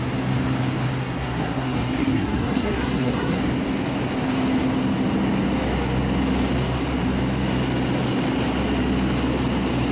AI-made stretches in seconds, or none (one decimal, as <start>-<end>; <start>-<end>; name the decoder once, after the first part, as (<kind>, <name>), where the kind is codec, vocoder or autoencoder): 1.0-3.4 (codec, SNAC)